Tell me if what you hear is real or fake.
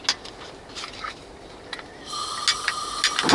real